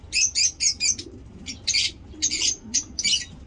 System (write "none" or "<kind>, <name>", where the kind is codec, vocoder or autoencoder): none